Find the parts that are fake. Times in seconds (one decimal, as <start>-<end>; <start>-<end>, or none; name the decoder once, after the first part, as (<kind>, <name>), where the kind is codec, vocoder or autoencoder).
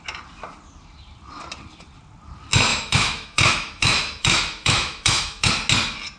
2.7-5.5 (autoencoder, DAC-VAE)